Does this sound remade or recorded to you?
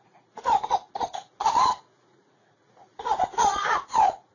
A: remade